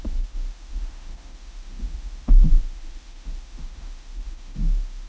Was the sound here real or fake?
fake